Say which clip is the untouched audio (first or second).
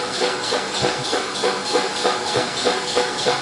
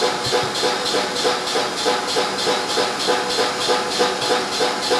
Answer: second